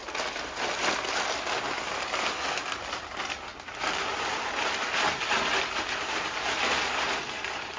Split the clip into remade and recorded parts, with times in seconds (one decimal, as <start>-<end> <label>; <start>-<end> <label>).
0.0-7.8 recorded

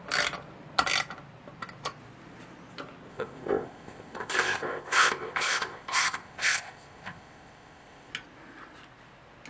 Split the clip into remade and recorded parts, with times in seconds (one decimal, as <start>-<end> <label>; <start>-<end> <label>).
0.0-3.1 recorded; 3.1-8.1 remade; 8.1-9.5 recorded

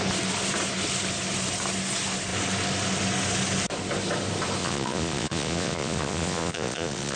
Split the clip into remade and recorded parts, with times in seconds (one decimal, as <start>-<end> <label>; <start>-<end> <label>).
0.0-4.6 recorded; 4.6-7.2 remade